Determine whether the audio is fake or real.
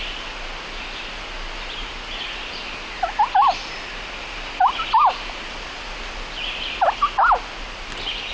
real